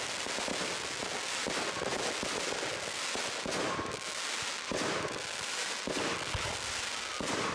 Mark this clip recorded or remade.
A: recorded